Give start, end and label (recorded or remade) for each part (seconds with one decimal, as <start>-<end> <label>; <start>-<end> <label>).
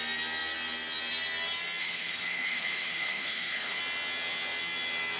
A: 0.0-1.8 recorded; 1.8-3.8 remade; 3.8-5.2 recorded